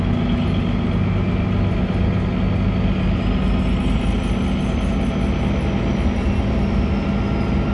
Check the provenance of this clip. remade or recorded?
recorded